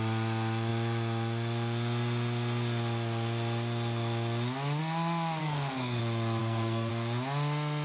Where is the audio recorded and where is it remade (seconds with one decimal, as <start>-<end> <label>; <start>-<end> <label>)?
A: 0.0-5.4 recorded; 5.4-6.0 remade; 6.0-6.4 recorded; 6.4-6.9 remade; 6.9-7.8 recorded